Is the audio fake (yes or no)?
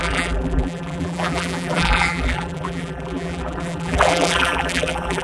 yes